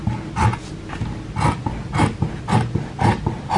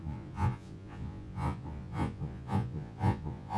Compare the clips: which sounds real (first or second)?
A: first